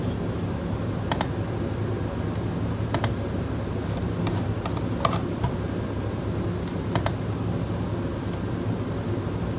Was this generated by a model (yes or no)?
no